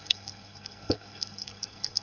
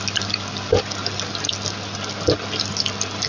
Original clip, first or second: second